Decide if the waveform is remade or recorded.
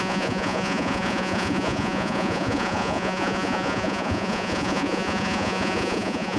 remade